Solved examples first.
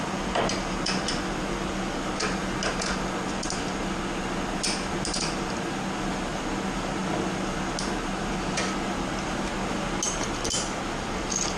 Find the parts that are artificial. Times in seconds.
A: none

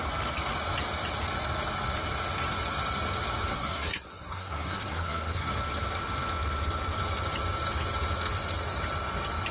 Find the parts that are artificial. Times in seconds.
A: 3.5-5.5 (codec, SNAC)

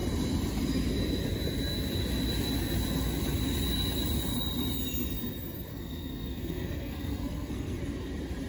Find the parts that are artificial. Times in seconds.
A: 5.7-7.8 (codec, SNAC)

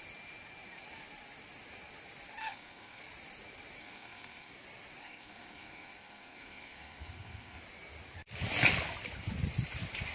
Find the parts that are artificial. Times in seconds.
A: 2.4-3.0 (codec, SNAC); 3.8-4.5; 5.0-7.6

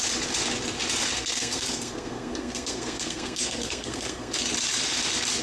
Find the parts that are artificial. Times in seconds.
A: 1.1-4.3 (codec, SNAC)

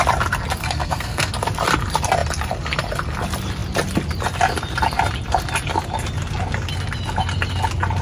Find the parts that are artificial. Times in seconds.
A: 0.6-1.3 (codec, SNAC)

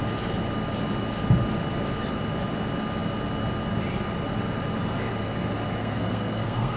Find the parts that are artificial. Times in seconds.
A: 5.8-6.8 (codec, SNAC)

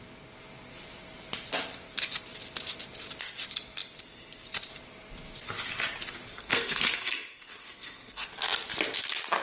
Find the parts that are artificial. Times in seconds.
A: 6.3-8.3 (codec, SNAC)